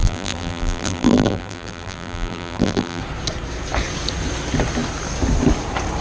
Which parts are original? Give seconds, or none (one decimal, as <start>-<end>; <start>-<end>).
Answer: 3.0-6.0